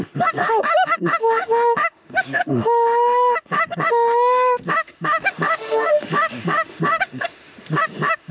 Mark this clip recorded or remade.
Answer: remade